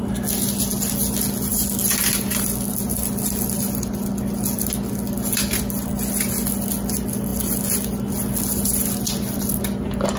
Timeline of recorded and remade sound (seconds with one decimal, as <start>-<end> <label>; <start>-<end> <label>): 0.0-10.2 recorded